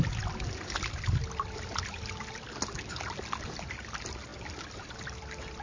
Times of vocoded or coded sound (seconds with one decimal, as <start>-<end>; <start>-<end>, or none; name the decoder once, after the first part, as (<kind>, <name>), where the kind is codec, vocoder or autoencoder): none